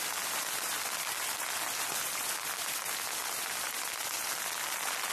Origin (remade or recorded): recorded